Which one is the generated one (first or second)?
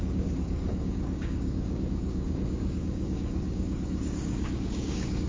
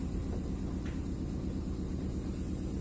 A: first